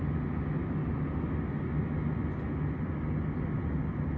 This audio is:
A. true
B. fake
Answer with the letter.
A